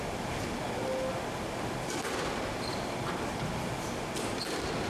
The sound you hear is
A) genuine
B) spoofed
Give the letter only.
A